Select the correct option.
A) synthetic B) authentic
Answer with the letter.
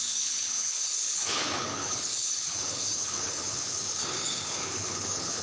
A